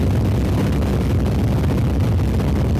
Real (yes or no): yes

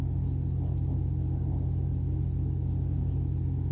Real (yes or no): yes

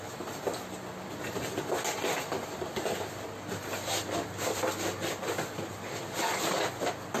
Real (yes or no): yes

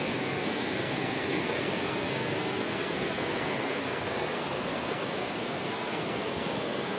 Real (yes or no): no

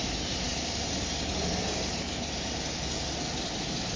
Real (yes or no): yes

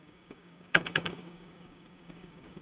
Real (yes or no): no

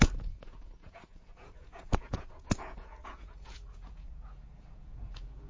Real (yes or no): no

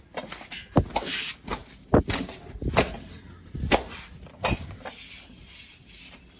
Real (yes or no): yes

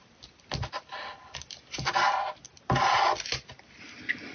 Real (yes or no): yes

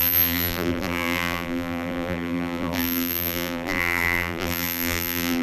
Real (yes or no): no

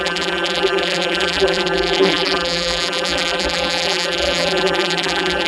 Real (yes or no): no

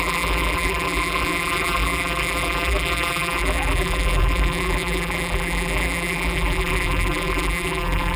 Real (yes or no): no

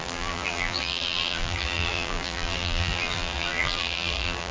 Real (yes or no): no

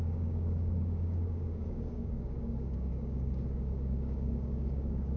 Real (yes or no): no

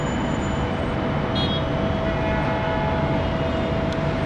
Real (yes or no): yes